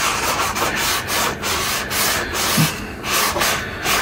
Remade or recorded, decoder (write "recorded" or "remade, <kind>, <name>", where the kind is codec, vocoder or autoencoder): recorded